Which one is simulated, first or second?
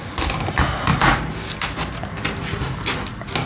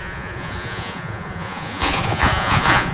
second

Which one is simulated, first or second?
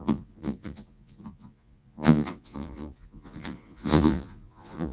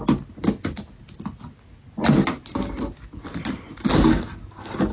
first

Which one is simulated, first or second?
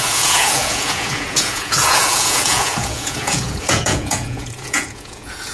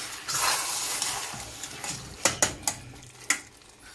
first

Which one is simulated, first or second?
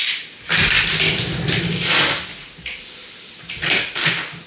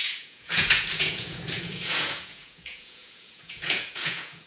second